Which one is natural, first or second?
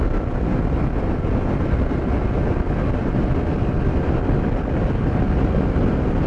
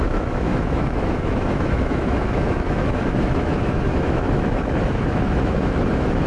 first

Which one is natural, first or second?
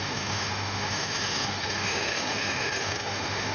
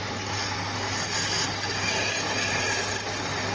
second